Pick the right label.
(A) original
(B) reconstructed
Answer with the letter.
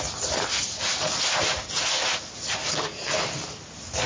A